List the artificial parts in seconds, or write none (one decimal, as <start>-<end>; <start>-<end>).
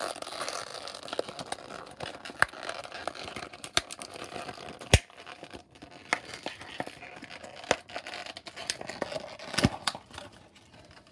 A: none